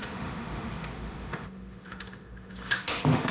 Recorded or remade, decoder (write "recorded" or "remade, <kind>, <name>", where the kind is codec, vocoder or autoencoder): remade, autoencoder, DAC-VAE